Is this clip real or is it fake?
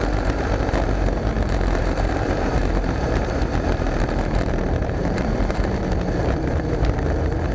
fake